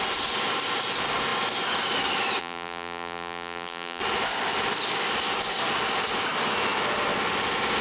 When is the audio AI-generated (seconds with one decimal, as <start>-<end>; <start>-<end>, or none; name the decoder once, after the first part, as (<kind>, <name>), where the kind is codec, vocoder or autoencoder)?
2.4-4.0 (vocoder, BigVGAN v2)

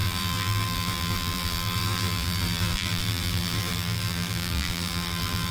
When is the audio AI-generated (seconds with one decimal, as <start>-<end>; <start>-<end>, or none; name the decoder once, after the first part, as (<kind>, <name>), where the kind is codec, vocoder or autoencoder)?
0.0-5.5 (vocoder, BigVGAN v2)

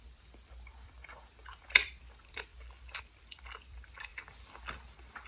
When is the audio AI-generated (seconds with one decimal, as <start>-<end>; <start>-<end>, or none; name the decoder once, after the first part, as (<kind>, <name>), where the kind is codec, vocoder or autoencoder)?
0.0-2.5 (vocoder, BigVGAN v2); 3.0-4.1

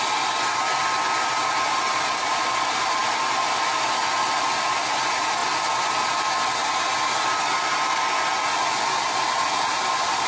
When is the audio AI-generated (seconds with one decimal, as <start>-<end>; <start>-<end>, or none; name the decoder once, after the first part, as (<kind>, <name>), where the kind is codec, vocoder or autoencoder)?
none

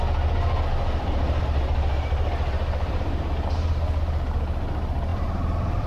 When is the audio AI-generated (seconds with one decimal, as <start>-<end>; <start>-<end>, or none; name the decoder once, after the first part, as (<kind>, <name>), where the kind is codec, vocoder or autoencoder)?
0.7-3.2 (vocoder, BigVGAN v2)

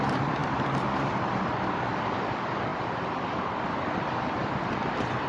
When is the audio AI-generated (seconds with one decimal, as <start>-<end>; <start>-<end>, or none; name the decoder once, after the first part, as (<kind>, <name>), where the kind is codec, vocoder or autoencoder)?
0.0-2.7 (vocoder, BigVGAN v2); 3.6-5.3